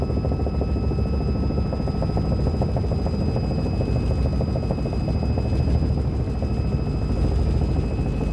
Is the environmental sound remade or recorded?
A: recorded